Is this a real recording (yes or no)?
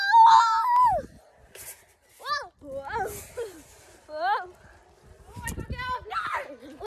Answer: yes